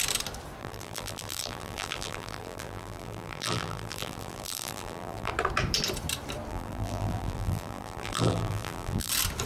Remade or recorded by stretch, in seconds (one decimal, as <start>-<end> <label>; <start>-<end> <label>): 0.0-0.6 recorded; 0.6-5.3 remade; 5.3-6.5 recorded; 6.5-9.1 remade; 9.1-9.5 recorded

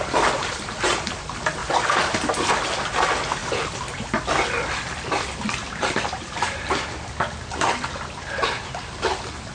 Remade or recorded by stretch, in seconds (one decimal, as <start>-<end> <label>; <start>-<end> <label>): 0.0-1.6 recorded; 1.6-2.5 remade; 2.5-3.4 recorded; 3.4-4.3 remade; 4.3-5.6 recorded; 5.6-7.5 remade; 7.5-9.5 recorded

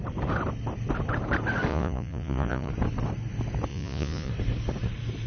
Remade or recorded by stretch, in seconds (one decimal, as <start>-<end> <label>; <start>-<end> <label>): 0.0-1.7 recorded; 1.7-2.7 remade; 2.7-3.7 recorded; 3.7-4.3 remade; 4.3-5.3 recorded

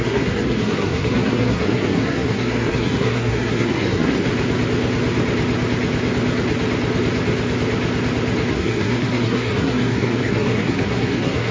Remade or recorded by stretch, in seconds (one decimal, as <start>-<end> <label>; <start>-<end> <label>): 0.0-4.3 remade; 4.3-8.5 recorded; 8.5-11.5 remade

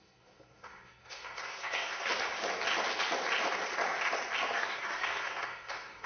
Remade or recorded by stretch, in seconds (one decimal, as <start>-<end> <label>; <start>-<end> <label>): 0.0-2.1 remade; 2.1-4.5 recorded; 4.5-6.1 remade

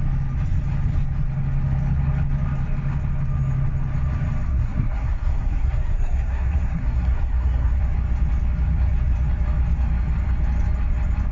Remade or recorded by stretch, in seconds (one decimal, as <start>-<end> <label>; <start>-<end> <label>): 0.0-4.5 recorded; 4.5-7.8 remade; 7.8-11.3 recorded

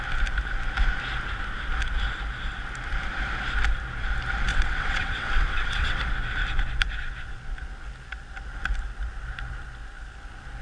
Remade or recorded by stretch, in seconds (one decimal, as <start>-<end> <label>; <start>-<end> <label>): 0.0-4.5 recorded; 4.5-6.0 remade; 6.0-10.6 recorded

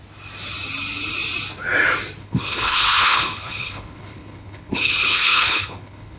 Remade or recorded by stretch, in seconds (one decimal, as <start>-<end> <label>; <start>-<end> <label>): 0.0-2.2 recorded; 2.2-6.2 remade